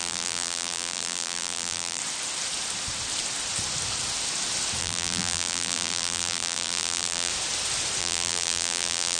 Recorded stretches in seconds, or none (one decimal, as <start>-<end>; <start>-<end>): 2.0-4.8; 7.3-8.0